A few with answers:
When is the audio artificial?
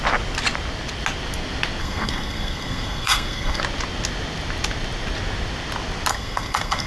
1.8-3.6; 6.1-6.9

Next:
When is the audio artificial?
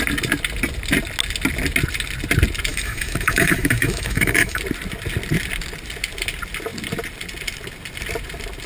2.7-4.6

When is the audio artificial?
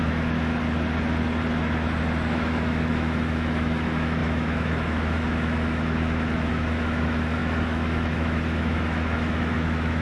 0.0-0.5; 2.3-10.0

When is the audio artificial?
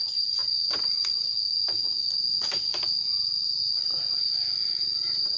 none